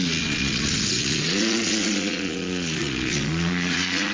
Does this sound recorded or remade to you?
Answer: remade